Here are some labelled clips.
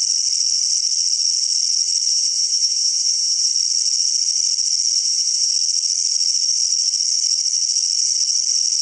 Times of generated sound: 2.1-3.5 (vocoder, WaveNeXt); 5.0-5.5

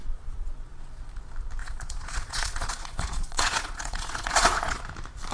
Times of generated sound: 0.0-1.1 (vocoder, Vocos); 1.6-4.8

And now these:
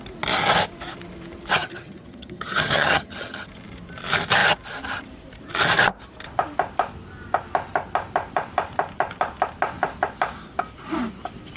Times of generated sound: 1.6-3.5 (vocoder, HiFi-GAN)

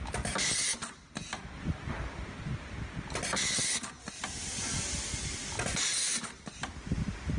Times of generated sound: none

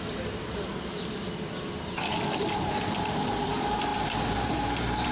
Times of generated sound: 0.0-1.2 (vocoder, BigVGAN v2); 2.4-5.1